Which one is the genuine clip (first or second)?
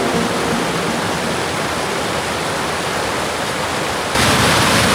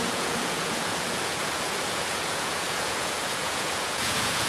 first